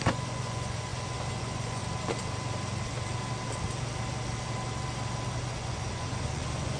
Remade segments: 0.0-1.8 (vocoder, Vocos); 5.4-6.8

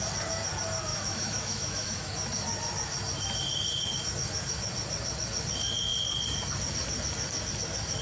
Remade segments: 0.9-2.1 (autoencoder, DAC-VAE)